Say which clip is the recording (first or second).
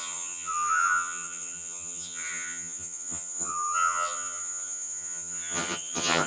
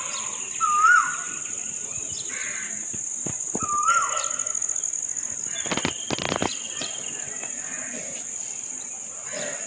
second